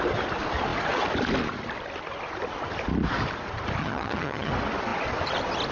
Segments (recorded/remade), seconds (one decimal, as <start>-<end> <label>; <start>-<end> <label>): 0.0-3.8 recorded; 3.8-4.5 remade; 4.5-5.7 recorded